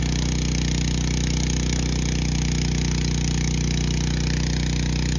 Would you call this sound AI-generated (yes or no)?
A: no